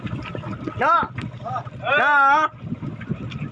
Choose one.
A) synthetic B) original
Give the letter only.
B